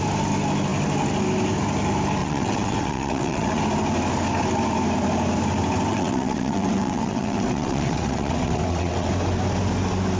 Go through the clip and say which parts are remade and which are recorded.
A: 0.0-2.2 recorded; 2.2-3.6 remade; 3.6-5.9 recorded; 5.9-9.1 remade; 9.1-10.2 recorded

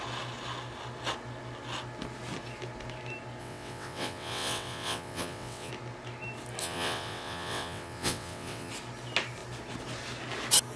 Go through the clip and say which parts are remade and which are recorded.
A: 0.0-3.4 recorded; 3.4-5.7 remade; 5.7-6.6 recorded; 6.6-8.7 remade; 8.7-10.8 recorded

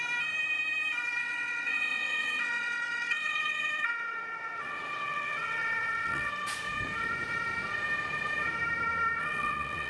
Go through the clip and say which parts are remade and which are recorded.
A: 0.0-1.2 recorded; 1.2-6.3 remade; 6.3-9.2 recorded; 9.2-9.9 remade